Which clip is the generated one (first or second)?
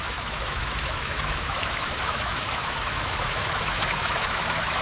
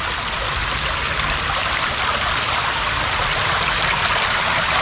first